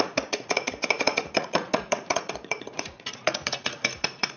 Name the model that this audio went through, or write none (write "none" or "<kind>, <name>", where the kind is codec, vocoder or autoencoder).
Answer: vocoder, Vocos